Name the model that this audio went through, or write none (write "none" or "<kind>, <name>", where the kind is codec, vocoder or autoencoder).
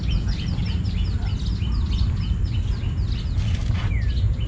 none